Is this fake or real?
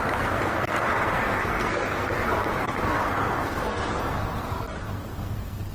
fake